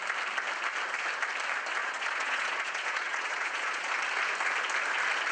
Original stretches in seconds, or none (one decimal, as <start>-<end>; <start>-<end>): 0.0-1.8; 3.9-5.3